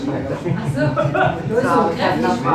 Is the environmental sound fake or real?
real